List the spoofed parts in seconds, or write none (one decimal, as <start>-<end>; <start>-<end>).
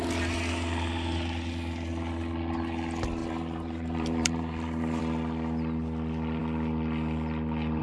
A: 3.2-5.0